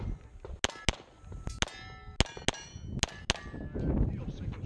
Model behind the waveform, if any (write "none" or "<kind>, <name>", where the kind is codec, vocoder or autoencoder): none